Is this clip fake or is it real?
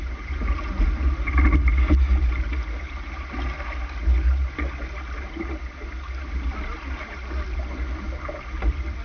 real